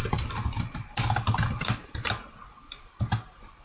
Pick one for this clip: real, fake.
real